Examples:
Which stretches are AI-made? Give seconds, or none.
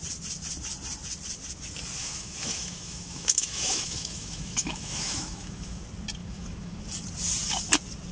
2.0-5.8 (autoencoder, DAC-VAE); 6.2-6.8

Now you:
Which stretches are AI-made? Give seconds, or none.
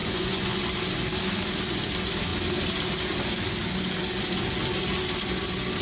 0.0-0.6 (vocoder, Vocos)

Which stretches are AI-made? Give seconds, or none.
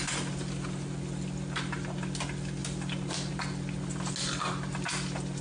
none